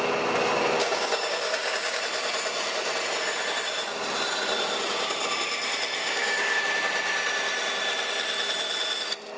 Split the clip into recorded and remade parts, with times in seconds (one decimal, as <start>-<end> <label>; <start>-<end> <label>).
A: 0.0-0.8 recorded; 0.8-2.0 remade; 2.0-6.0 recorded; 6.0-6.6 remade; 6.6-9.4 recorded